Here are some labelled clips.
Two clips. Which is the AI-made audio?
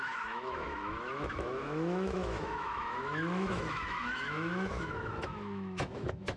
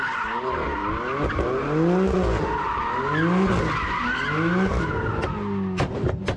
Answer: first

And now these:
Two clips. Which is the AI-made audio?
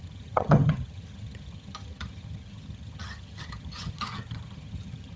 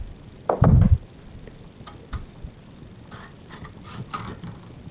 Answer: first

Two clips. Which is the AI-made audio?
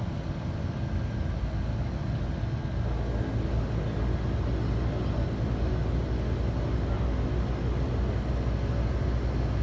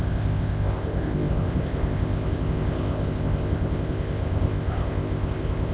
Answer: second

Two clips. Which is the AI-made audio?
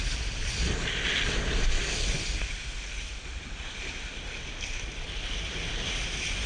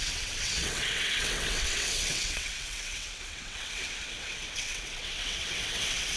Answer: second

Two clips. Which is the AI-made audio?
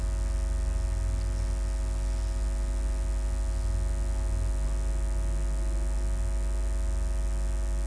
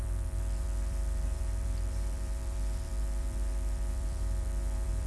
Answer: second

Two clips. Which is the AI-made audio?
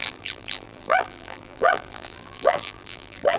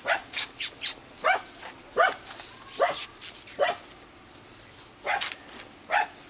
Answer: first